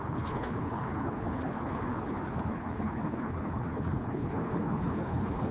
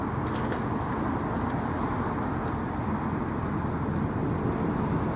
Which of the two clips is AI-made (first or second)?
first